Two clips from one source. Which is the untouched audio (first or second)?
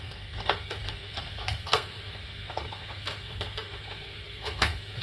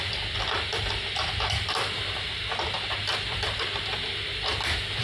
second